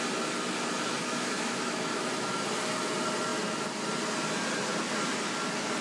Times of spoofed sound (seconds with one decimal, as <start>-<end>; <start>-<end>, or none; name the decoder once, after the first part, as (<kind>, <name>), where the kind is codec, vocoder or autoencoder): 1.0-2.3 (autoencoder, DAC-VAE)